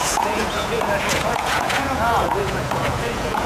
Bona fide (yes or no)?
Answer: no